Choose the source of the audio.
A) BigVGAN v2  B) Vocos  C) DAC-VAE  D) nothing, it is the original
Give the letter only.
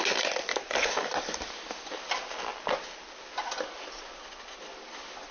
D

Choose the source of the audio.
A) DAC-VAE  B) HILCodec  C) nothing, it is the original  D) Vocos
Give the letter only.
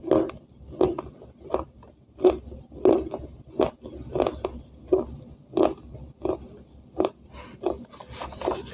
C